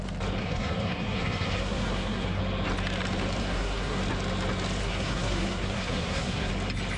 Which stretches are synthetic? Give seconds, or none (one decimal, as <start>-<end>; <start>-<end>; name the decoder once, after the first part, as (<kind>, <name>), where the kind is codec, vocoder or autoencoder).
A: 0.4-2.4 (codec, SNAC); 3.4-4.0; 4.8-6.5